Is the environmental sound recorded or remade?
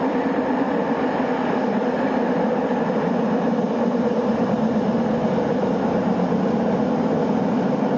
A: remade